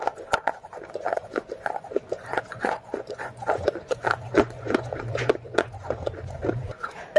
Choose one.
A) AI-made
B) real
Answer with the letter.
A